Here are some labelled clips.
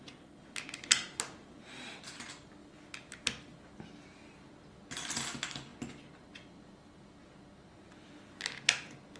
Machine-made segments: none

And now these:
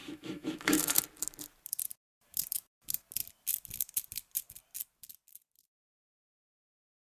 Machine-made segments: 0.0-1.0

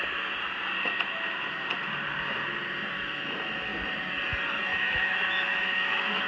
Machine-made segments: 4.7-6.3

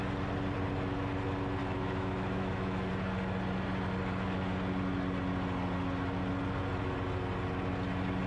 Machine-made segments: 1.6-2.9

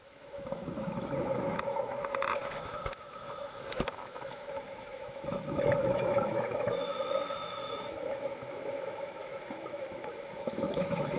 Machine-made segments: 0.0-11.2

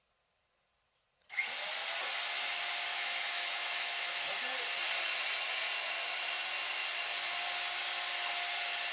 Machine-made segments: 2.9-4.3

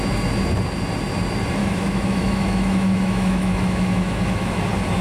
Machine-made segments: 1.6-4.6

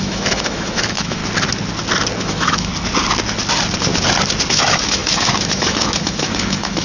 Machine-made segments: 0.0-1.2; 2.2-2.7; 4.5-6.8